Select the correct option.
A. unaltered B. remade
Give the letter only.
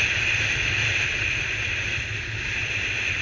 A